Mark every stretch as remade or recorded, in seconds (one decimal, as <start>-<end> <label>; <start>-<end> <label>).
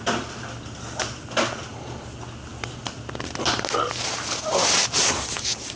0.0-5.8 recorded